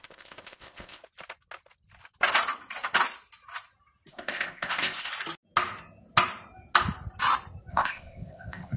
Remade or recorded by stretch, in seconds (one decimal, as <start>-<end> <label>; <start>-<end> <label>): 0.0-1.0 remade; 1.0-4.1 recorded; 4.1-5.1 remade; 5.1-7.7 recorded; 7.7-8.8 remade